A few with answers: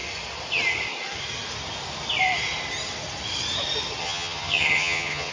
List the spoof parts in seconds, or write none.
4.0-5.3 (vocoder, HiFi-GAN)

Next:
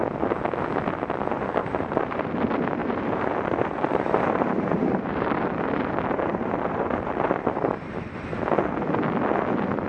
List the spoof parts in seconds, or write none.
1.6-2.3 (vocoder, BigVGAN v2); 2.8-7.9

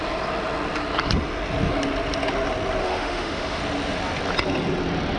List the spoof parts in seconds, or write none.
2.8-3.6 (autoencoder, DAC-VAE)

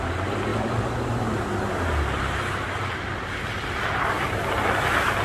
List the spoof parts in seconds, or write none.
0.5-3.0 (vocoder, BigVGAN v2)

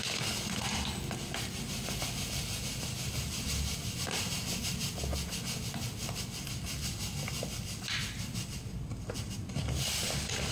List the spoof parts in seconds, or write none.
none

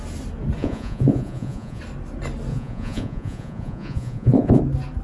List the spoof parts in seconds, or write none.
0.6-1.8 (vocoder, Vocos); 2.5-4.6

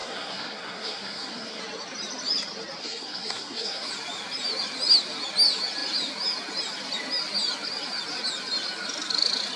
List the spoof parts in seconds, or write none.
0.0-1.6 (codec, SNAC); 2.8-3.9